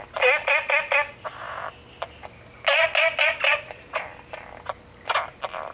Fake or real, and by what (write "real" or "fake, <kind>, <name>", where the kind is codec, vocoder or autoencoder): real